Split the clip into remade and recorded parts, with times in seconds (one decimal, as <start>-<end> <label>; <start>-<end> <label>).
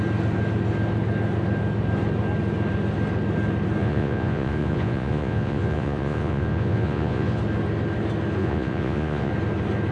0.0-3.8 recorded; 3.8-7.4 remade; 7.4-8.4 recorded; 8.4-9.3 remade; 9.3-9.9 recorded